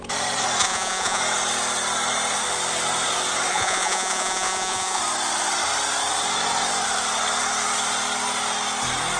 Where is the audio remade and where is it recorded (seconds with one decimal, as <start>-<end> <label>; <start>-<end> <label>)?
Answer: 0.0-0.6 recorded; 0.6-1.2 remade; 1.2-3.5 recorded; 3.5-5.0 remade; 5.0-9.2 recorded